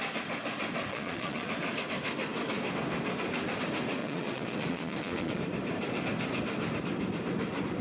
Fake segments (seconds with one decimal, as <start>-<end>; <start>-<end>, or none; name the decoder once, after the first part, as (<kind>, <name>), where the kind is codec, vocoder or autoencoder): 0.9-1.5 (vocoder, Vocos); 4.0-5.4